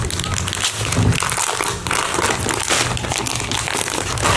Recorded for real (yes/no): yes